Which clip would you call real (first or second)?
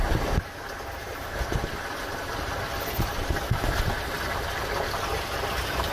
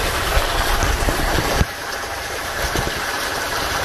first